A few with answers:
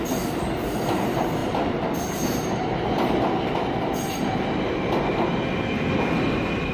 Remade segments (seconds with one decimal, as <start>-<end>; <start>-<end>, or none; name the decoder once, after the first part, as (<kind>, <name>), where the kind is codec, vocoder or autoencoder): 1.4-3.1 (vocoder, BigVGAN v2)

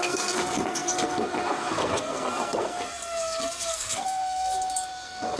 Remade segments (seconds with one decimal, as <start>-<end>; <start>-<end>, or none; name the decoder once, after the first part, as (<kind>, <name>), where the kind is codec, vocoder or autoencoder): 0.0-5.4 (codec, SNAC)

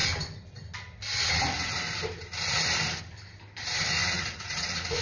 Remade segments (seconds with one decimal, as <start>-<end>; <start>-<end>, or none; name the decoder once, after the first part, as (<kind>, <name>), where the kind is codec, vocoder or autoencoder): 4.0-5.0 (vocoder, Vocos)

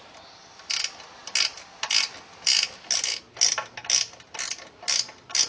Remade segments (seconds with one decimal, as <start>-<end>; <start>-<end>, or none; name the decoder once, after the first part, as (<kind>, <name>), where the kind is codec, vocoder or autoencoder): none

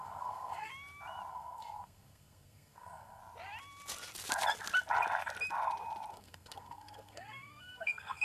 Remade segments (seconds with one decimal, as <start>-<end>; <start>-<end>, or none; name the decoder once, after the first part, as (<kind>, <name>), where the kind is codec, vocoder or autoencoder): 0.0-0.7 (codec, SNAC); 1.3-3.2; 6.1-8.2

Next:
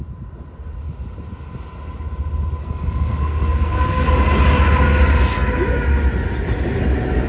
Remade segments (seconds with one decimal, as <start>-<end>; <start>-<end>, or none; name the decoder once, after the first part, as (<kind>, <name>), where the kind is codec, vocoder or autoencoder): 2.6-4.1 (codec, SNAC)